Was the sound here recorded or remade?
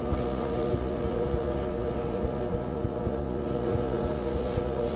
remade